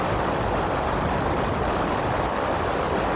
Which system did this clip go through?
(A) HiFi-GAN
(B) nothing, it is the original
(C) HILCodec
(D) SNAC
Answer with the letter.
B